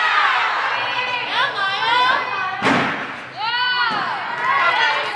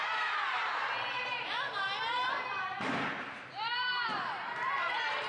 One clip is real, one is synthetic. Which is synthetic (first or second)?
second